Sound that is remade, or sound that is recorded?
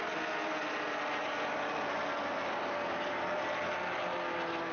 recorded